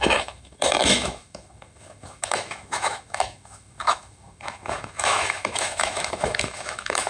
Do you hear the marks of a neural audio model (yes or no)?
yes